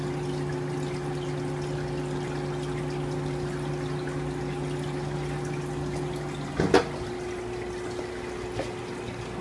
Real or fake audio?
real